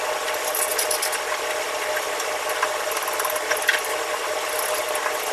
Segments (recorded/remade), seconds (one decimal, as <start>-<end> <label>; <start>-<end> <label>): 0.0-5.3 recorded